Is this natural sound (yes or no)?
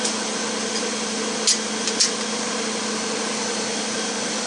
yes